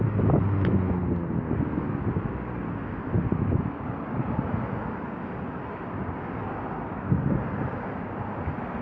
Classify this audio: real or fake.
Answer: real